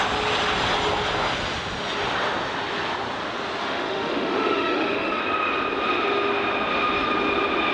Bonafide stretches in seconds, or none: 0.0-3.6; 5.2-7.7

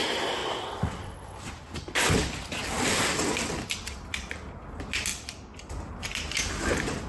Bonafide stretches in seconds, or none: 0.0-0.4; 1.5-7.1